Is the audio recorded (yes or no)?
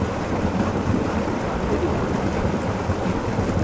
yes